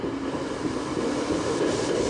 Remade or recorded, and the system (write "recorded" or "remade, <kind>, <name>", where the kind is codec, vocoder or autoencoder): recorded